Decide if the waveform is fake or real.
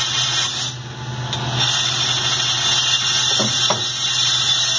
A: real